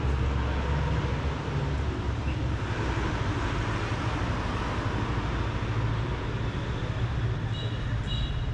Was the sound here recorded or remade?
recorded